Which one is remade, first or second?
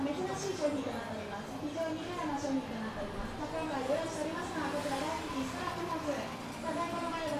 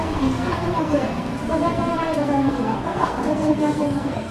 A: second